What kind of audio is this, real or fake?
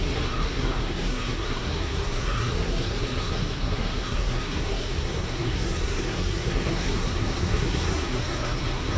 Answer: fake